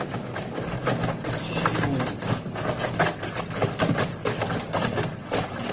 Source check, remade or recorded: recorded